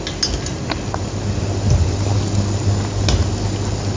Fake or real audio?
real